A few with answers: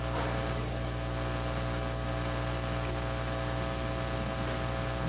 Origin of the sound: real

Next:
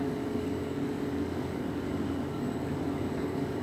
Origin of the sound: fake